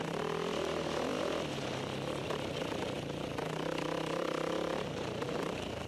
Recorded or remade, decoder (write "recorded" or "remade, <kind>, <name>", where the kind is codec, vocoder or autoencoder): recorded